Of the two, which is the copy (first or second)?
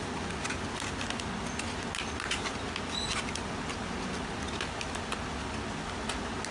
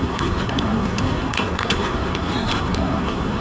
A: second